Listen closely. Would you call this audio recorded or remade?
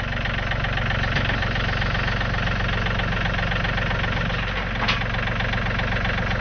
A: recorded